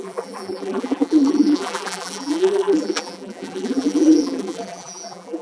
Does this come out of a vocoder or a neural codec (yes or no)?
yes